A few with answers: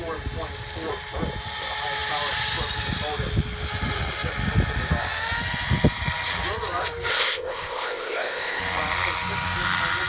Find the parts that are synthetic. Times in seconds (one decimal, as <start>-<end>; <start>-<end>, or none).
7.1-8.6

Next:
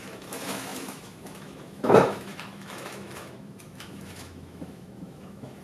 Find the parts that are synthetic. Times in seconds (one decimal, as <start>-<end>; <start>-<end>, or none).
0.0-5.6

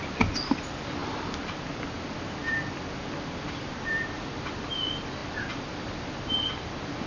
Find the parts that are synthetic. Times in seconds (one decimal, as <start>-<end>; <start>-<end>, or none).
none

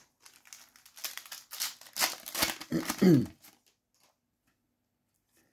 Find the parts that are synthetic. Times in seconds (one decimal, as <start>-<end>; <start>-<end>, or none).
2.7-3.4

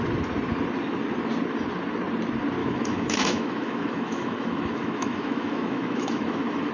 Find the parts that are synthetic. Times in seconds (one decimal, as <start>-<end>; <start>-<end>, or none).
2.6-6.7

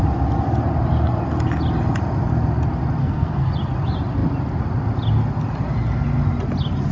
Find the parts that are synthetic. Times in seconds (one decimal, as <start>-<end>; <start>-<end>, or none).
3.0-3.5

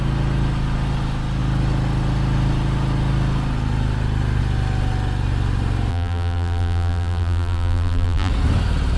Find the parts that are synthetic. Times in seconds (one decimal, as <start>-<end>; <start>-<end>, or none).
5.9-8.3